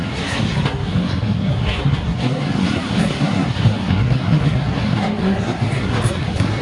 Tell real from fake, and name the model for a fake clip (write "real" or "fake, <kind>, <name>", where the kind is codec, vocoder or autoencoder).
fake, codec, SNAC